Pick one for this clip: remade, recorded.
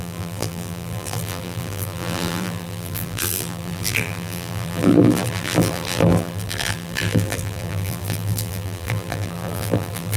remade